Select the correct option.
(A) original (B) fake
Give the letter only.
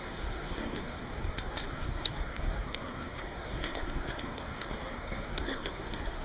B